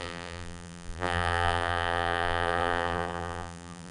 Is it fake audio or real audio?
fake